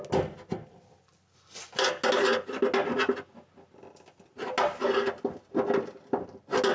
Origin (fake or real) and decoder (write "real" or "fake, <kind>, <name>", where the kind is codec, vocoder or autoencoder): real